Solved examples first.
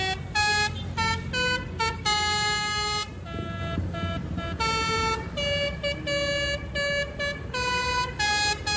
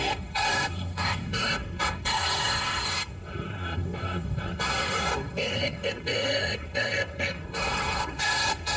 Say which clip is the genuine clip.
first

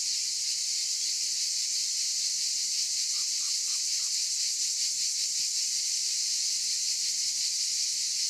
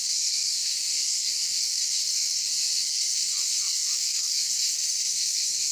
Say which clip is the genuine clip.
first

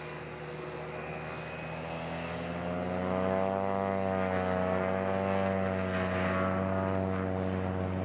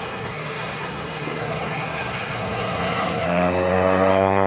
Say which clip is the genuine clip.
first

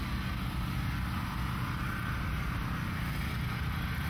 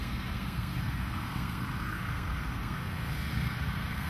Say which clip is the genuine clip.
first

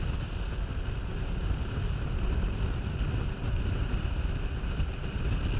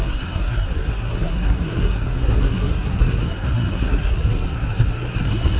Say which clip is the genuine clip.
first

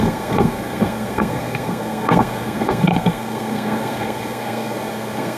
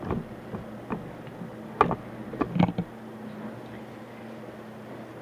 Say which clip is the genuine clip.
second